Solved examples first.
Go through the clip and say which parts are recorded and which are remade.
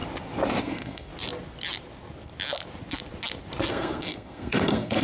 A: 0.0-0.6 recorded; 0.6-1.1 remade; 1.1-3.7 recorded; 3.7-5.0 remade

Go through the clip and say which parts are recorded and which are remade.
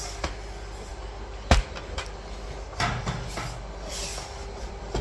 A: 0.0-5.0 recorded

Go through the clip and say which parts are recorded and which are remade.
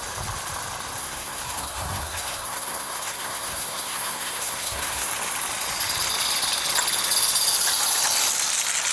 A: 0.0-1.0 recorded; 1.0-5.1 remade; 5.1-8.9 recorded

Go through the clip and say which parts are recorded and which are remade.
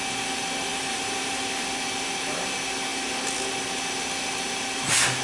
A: 0.0-0.7 recorded; 0.7-1.4 remade; 1.4-5.2 recorded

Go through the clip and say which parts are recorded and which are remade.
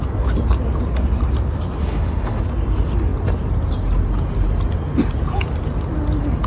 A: 0.0-1.8 recorded; 1.8-2.4 remade; 2.4-6.5 recorded